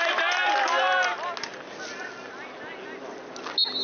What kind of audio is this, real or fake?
real